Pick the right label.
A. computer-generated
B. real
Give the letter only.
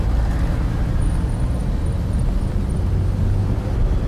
B